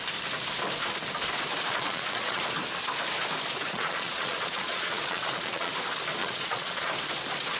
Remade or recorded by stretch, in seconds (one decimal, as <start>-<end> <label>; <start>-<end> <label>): 0.0-1.7 recorded; 1.7-2.4 remade; 2.4-3.7 recorded; 3.7-5.7 remade; 5.7-6.2 recorded; 6.2-6.9 remade; 6.9-7.6 recorded